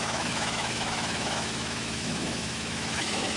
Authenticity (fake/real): fake